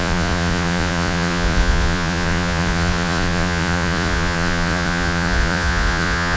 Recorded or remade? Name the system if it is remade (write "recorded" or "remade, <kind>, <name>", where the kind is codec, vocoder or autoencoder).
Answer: remade, vocoder, Vocos